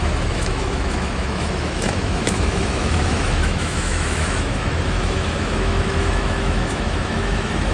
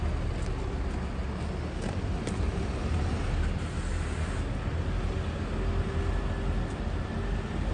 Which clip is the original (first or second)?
second